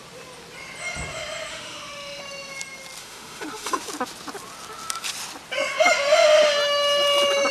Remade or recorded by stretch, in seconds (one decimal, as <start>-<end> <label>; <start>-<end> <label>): 0.0-1.5 recorded; 1.5-2.2 remade; 2.2-3.0 recorded; 3.0-3.8 remade; 3.8-7.5 recorded